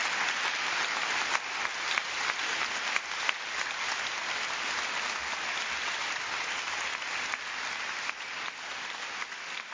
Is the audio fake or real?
real